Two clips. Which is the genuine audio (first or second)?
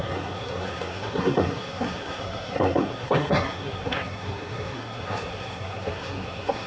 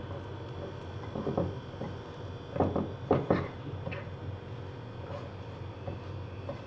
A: second